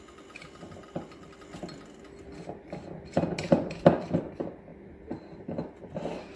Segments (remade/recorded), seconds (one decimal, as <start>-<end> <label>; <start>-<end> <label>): 0.0-6.4 recorded